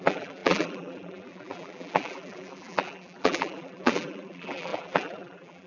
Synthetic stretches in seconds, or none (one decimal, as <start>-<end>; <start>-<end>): 0.0-5.7